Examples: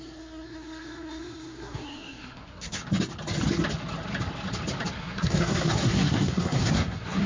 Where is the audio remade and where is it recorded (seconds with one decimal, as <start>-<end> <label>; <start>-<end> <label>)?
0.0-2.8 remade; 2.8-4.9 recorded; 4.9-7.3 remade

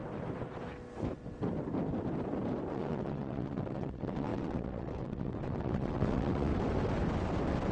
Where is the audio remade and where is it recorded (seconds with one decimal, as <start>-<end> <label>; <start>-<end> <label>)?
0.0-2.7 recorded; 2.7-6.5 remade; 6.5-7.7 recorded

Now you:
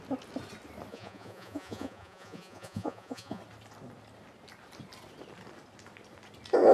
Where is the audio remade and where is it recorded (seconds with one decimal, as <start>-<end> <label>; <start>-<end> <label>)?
0.0-0.9 recorded; 0.9-3.4 remade; 3.4-6.7 recorded